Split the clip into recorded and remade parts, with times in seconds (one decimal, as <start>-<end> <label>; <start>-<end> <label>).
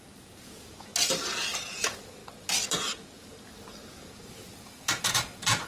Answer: 0.0-0.9 remade; 0.9-1.6 recorded; 1.6-2.2 remade; 2.2-3.9 recorded; 3.9-5.7 remade